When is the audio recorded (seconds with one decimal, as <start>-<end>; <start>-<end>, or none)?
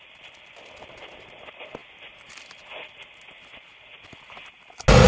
0.0-5.1